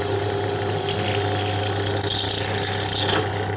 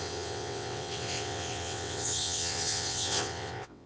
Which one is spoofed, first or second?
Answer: second